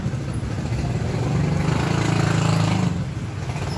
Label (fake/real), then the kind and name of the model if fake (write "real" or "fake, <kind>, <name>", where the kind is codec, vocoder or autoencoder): real